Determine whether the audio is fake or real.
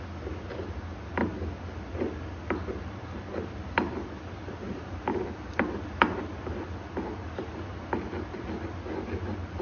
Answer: real